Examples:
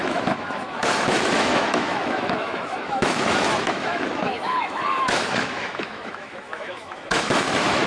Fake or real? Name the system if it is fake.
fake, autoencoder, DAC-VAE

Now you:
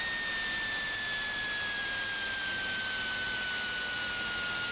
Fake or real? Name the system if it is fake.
real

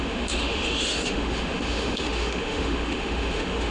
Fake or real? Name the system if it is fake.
fake, autoencoder, DAC-VAE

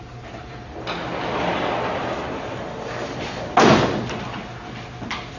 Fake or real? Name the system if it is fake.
real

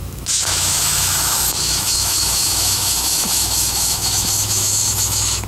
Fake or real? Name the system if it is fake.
fake, autoencoder, DAC-VAE